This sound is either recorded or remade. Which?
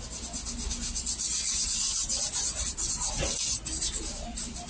recorded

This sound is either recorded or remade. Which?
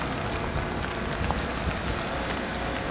recorded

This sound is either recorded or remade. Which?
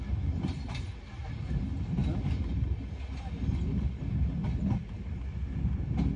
recorded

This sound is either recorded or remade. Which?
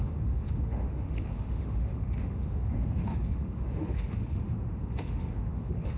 remade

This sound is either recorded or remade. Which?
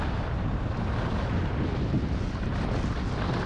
recorded